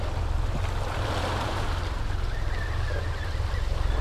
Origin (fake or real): real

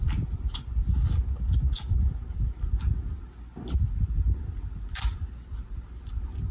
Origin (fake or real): real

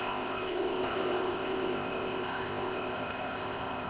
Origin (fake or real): fake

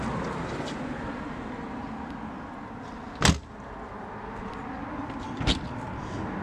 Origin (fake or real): real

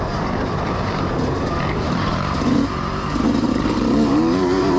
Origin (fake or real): fake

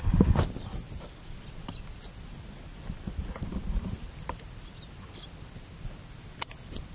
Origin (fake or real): real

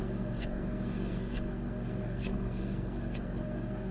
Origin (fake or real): fake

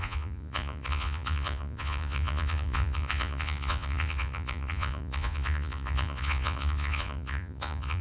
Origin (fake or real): fake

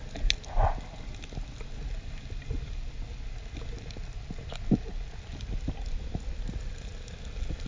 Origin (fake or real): real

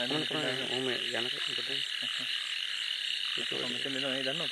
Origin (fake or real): real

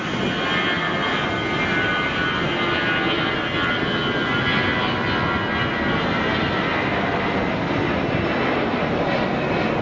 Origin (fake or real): real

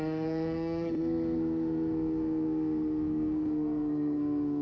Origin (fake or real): fake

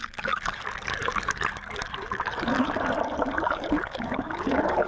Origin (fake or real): fake